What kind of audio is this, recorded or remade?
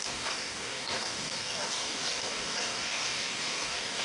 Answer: remade